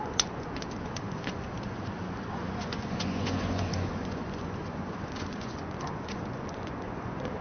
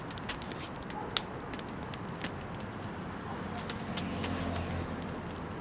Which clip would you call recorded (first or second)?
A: second